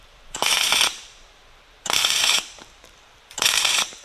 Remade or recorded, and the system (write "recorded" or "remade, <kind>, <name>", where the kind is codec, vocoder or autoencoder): remade, vocoder, BigVGAN v2